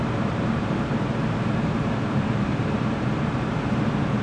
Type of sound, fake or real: fake